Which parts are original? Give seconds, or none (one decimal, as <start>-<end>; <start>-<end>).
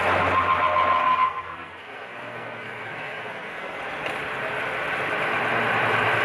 0.0-1.0; 3.8-6.2